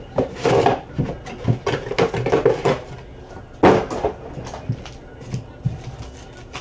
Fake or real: real